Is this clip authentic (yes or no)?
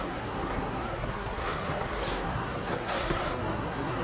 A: no